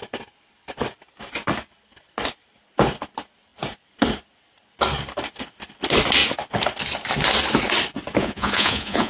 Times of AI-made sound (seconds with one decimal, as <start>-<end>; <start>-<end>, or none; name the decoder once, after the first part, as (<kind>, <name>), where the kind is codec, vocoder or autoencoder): 8.2-9.1 (vocoder, Vocos)